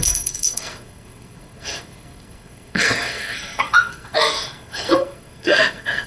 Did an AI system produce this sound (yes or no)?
yes